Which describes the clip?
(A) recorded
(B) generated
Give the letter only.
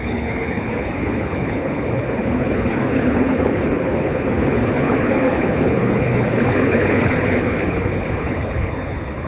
B